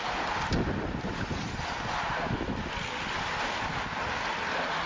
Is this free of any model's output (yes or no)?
yes